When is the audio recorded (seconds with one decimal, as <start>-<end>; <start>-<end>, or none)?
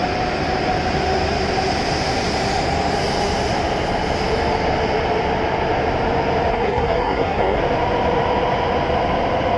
0.0-6.5; 7.6-9.6